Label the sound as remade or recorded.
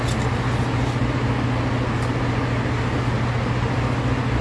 recorded